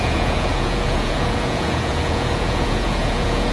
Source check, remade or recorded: remade